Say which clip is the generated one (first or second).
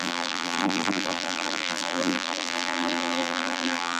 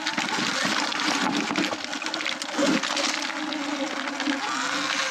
first